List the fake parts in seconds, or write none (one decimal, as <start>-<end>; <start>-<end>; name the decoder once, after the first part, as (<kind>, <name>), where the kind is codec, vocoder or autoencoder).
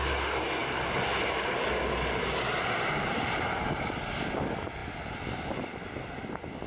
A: none